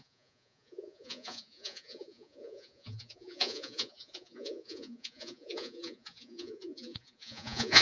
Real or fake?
fake